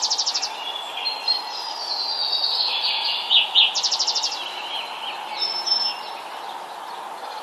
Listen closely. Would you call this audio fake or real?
real